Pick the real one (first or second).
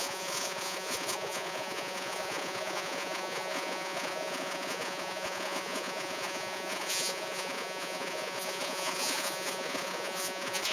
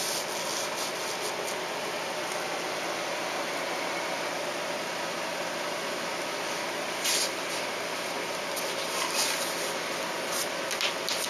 second